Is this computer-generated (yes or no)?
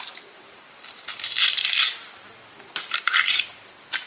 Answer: no